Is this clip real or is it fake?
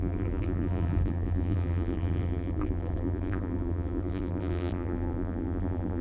fake